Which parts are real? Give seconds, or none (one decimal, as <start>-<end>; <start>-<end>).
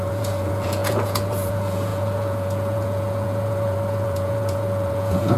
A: none